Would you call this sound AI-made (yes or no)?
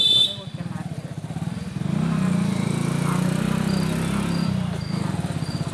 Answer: no